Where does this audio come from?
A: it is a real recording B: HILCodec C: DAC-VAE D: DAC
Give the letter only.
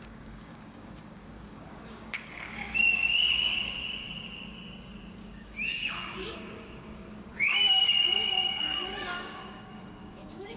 D